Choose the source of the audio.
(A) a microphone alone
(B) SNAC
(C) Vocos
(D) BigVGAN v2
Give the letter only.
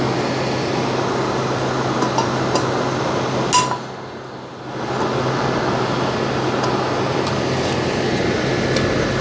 A